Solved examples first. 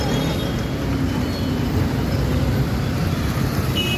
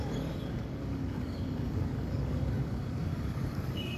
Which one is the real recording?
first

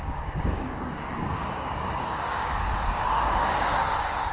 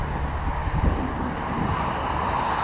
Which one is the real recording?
second